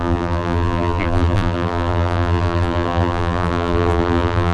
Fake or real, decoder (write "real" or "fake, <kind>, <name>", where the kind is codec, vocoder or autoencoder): fake, vocoder, BigVGAN v2